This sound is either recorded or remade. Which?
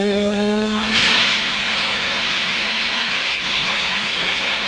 remade